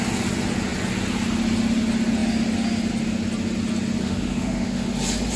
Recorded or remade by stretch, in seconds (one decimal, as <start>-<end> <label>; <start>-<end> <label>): 0.0-4.0 recorded; 4.0-4.9 remade; 4.9-5.4 recorded